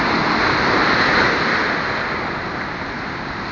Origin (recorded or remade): recorded